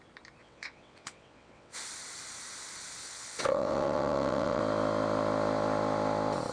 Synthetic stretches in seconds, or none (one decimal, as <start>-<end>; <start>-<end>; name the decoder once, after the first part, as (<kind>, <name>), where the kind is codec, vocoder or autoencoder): 0.4-1.8 (vocoder, WaveNeXt); 3.0-4.6